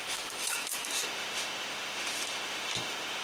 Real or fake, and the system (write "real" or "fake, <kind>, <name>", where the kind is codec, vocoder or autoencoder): fake, autoencoder, DAC-VAE